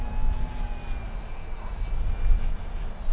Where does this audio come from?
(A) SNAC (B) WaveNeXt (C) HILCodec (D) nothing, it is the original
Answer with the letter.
D